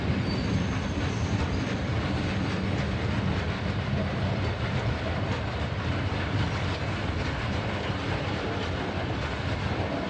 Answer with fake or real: real